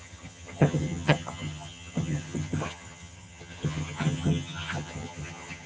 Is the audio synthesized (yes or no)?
yes